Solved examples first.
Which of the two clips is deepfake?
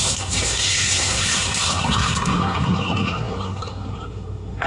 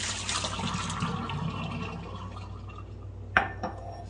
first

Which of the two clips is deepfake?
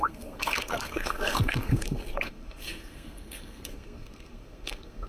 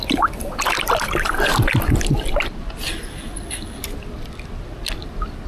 first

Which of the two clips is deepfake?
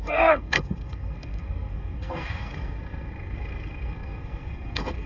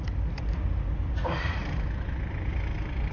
first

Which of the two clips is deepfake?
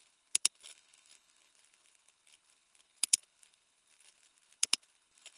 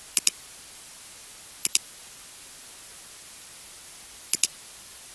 first